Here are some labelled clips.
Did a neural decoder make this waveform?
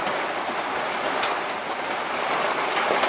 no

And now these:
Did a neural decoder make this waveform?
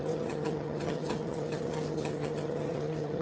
yes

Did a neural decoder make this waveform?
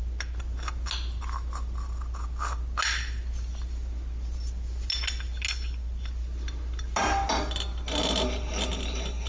no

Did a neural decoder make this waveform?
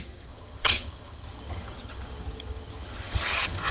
yes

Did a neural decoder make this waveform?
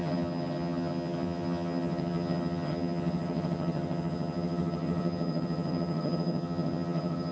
yes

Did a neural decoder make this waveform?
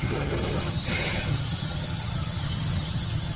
yes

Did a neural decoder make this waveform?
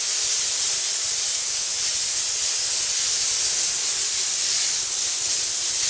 no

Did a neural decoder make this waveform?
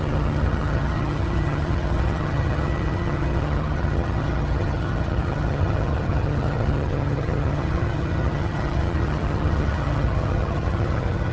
yes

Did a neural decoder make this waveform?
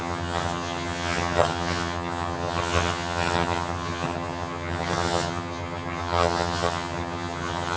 yes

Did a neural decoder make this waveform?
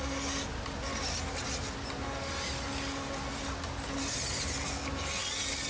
no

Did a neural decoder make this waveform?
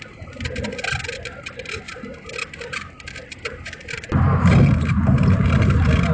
no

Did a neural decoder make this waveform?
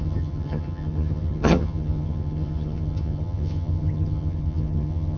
yes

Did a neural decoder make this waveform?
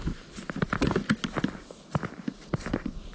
no